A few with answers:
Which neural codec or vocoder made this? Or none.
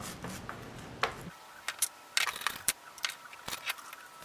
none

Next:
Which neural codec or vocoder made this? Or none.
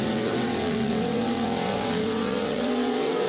vocoder, WaveNeXt